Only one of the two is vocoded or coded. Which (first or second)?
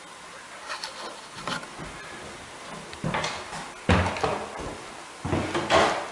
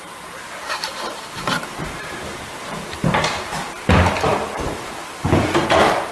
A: second